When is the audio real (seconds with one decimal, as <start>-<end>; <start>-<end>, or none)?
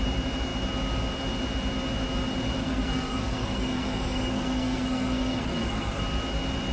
0.0-2.6; 6.0-6.7